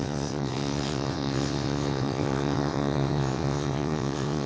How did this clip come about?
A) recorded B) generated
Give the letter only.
B